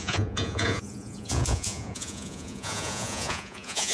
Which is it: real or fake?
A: fake